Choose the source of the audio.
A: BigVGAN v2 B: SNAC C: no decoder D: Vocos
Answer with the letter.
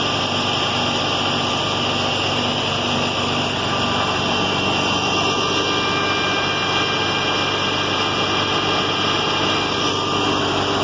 C